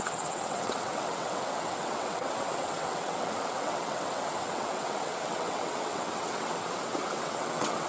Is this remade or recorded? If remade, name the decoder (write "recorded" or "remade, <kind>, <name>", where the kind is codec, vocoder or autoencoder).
remade, vocoder, WaveNeXt